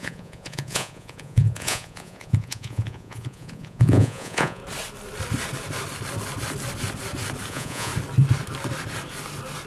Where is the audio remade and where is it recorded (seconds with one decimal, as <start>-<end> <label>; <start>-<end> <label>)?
0.0-4.6 remade; 4.6-7.5 recorded; 7.5-7.9 remade; 7.9-9.7 recorded